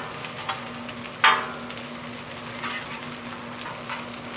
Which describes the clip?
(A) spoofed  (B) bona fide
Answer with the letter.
B